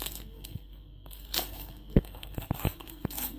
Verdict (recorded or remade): remade